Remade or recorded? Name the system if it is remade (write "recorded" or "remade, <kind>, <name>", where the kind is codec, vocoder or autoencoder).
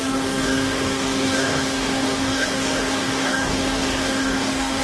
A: remade, codec, DAC